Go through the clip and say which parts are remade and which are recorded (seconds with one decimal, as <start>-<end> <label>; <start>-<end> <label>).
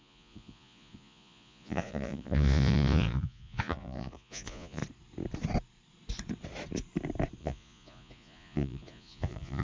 0.0-4.8 remade; 4.8-7.4 recorded; 7.4-9.6 remade